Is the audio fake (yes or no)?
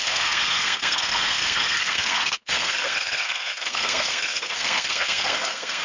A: yes